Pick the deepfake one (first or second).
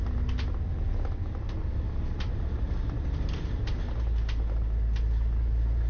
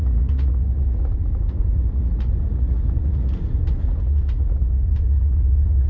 second